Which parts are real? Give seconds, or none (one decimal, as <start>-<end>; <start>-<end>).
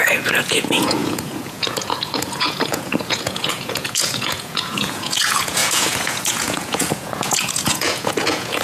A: none